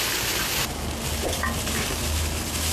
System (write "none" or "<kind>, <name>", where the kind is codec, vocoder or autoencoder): none